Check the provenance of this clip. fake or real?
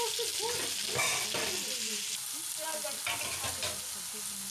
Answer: real